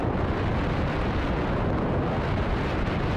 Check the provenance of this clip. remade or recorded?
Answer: recorded